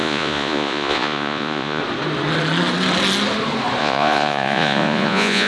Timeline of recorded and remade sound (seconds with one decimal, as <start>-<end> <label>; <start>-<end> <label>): 0.0-1.8 remade; 1.8-3.8 recorded; 3.8-5.5 remade

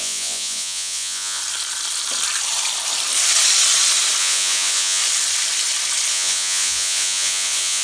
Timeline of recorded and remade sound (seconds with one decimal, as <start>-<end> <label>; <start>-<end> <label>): 0.0-1.4 remade; 1.4-4.2 recorded; 4.2-5.0 remade; 5.0-6.1 recorded; 6.1-7.8 remade

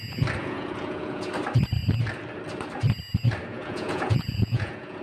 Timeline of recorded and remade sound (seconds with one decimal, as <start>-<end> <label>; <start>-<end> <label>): 0.0-0.4 recorded; 0.4-1.3 remade; 1.3-3.5 recorded; 3.5-5.0 remade